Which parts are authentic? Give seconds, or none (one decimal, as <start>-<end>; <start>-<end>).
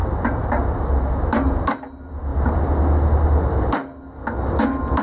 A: 0.0-5.0